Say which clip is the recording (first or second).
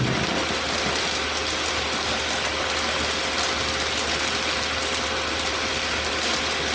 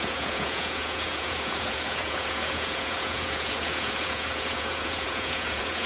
first